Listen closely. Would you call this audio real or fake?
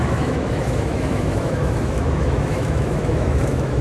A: fake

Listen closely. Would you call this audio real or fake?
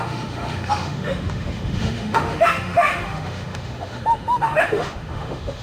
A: fake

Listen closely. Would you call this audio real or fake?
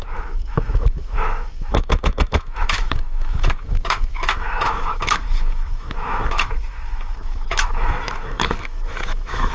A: fake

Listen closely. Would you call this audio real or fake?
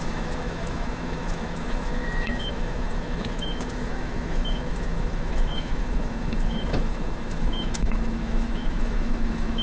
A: fake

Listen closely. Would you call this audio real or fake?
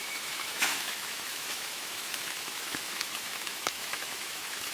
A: fake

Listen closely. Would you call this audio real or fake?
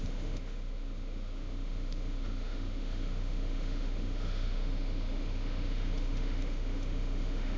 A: fake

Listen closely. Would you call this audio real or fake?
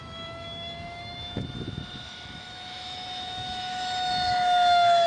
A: fake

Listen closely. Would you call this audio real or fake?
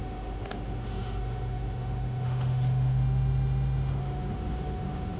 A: fake